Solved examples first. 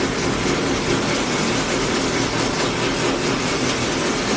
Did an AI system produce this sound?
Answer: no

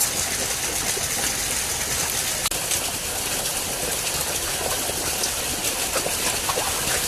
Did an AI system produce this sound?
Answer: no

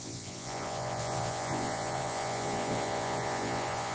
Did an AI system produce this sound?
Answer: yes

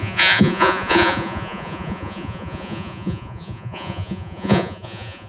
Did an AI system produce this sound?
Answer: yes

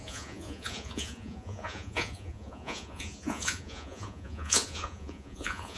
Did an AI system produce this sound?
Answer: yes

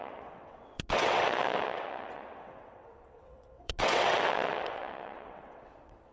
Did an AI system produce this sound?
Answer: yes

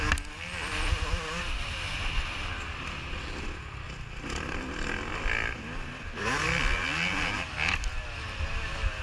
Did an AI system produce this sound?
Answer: no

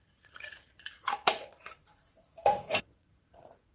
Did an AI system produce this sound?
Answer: yes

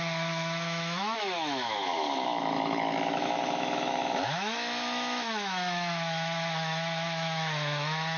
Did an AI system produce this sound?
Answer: yes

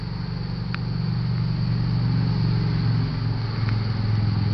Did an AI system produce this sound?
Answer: no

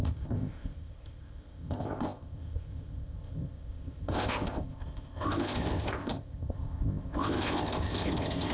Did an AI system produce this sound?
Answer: yes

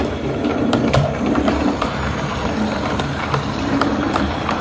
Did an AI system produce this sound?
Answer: yes